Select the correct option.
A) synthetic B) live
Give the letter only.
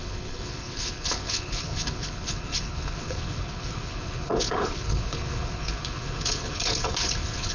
A